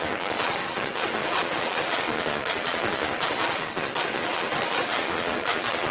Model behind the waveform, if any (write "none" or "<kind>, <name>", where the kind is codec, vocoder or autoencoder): vocoder, Vocos